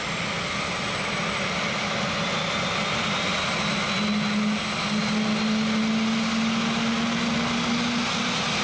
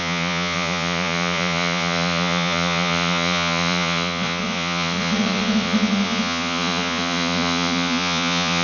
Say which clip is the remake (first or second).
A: second